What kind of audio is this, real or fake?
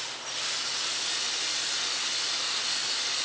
real